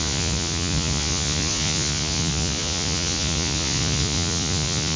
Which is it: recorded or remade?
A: remade